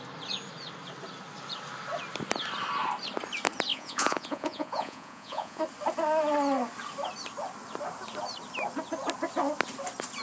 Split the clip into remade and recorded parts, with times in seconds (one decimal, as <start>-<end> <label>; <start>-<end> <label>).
0.0-3.7 recorded; 3.7-5.6 remade; 5.6-10.2 recorded